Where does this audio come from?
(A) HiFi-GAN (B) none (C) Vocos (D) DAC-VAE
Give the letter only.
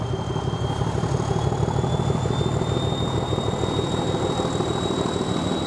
B